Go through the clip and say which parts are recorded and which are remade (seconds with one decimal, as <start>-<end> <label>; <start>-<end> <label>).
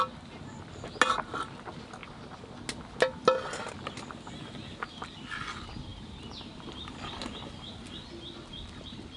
0.0-9.2 recorded